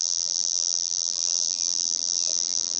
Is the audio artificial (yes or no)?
yes